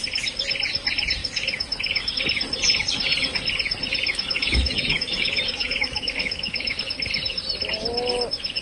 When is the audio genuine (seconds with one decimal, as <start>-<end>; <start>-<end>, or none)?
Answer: 0.0-1.2; 2.1-4.1; 6.8-8.6